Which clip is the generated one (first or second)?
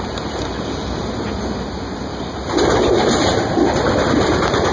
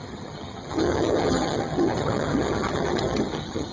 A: second